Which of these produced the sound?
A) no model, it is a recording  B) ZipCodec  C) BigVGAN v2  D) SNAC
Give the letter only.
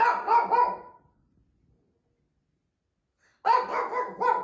A